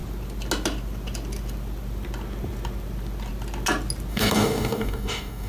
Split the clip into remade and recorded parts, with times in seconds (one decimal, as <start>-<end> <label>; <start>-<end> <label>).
0.0-4.1 recorded; 4.1-5.5 remade